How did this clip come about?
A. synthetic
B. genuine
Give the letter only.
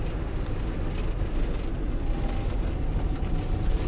B